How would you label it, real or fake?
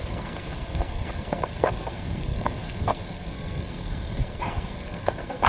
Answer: fake